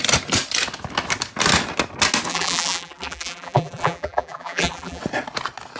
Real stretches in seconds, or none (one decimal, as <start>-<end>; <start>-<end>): 0.0-2.3; 5.0-5.8